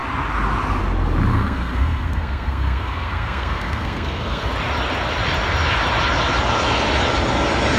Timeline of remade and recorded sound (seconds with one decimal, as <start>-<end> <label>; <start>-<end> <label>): 0.0-1.3 recorded; 1.3-4.5 remade; 4.5-7.8 recorded

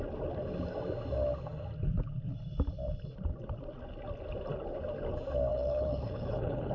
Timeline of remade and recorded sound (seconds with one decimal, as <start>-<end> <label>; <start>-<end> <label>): 0.0-5.5 recorded; 5.5-6.7 remade

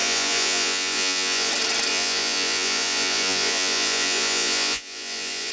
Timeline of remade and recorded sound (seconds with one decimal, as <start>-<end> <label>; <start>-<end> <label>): 0.0-1.5 remade; 1.5-1.9 recorded; 1.9-5.5 remade

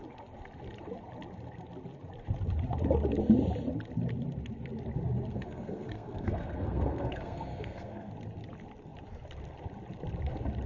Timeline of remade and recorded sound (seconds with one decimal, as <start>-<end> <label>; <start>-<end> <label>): 0.0-5.3 recorded; 5.3-8.1 remade; 8.1-10.7 recorded

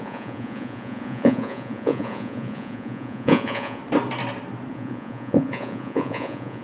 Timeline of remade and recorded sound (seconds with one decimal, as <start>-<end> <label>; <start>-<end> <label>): 0.0-3.8 remade; 3.8-4.7 recorded; 4.7-6.6 remade

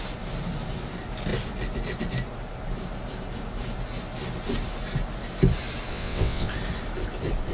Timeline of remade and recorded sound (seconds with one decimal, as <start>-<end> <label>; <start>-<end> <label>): 0.0-5.9 recorded; 5.9-6.5 remade; 6.5-7.5 recorded